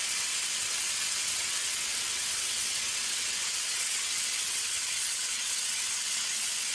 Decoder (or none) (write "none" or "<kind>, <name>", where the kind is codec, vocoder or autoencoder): vocoder, WaveNeXt